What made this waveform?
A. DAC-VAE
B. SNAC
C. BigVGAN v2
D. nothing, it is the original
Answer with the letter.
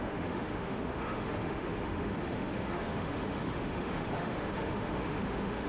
A